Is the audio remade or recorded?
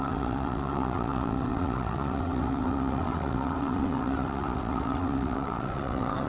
remade